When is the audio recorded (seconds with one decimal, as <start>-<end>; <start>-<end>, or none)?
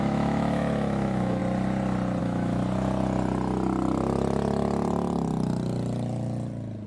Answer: 1.4-2.2; 2.6-6.9